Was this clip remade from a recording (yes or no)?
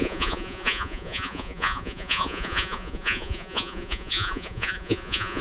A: yes